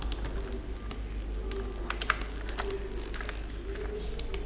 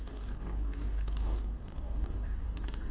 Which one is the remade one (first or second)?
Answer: second